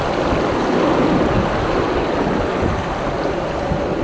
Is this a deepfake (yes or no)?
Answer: no